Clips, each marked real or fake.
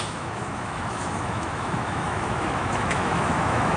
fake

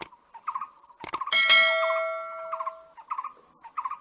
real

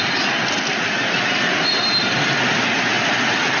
real